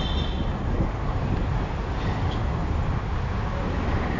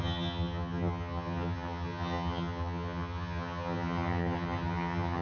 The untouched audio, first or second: first